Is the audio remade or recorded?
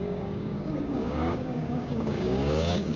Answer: remade